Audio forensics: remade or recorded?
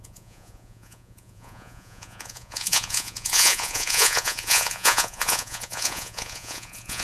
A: remade